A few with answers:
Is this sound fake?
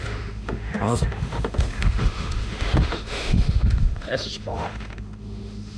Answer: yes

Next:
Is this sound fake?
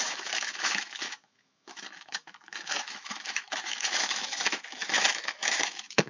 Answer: yes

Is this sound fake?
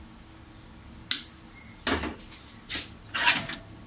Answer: no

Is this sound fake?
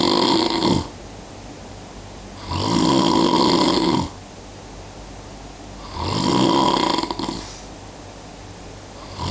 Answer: no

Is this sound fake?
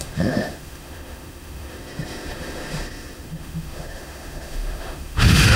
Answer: yes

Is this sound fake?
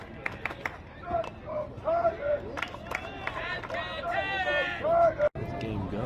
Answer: no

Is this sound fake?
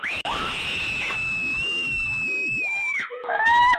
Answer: yes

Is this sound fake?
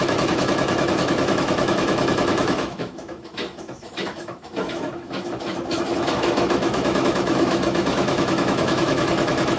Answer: yes